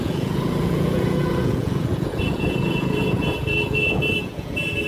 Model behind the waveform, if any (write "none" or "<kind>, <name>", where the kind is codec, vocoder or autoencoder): vocoder, Vocos